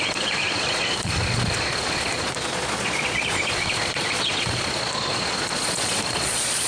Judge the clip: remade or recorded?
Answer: remade